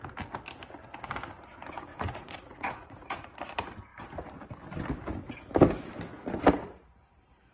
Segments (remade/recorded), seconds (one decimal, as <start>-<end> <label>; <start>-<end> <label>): 0.0-1.9 recorded; 1.9-3.2 remade; 3.2-7.5 recorded